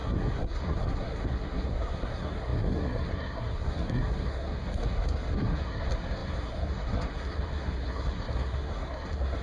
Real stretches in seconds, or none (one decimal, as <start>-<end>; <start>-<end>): none